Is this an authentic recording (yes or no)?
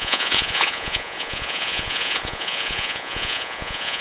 no